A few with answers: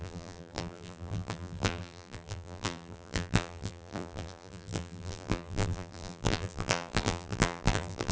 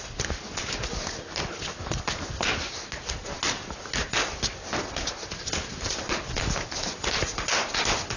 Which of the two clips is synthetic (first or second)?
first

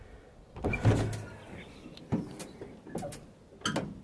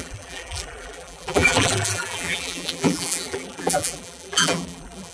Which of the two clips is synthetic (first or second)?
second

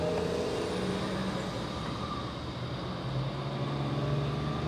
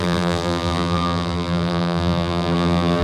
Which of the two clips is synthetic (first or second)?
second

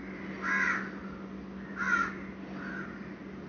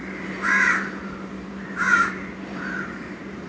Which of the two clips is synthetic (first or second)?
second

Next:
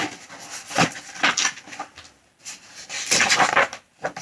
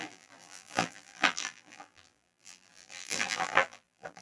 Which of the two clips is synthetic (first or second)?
second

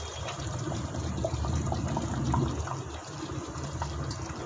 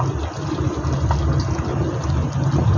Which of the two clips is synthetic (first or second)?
first